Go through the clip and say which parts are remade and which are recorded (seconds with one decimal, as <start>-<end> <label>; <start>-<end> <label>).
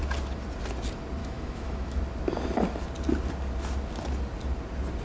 0.0-1.2 recorded; 1.2-2.0 remade; 2.0-5.0 recorded